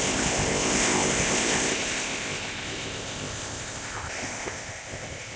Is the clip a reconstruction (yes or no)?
yes